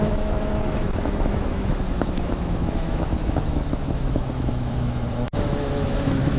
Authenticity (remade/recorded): remade